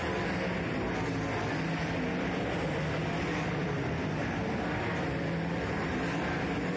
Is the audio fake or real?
real